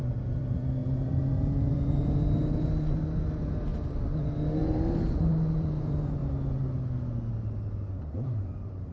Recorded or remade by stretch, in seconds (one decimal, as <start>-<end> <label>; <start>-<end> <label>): 0.0-3.7 remade; 3.7-4.6 recorded; 4.6-6.2 remade; 6.2-8.0 recorded; 8.0-8.9 remade